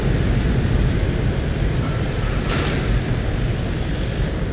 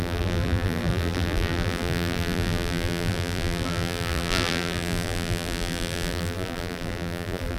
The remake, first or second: second